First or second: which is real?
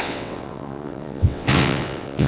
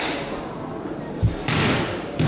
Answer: second